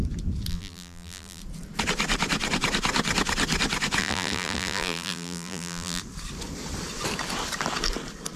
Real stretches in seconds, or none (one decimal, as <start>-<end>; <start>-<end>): 0.0-0.5; 1.4-4.0; 6.0-8.4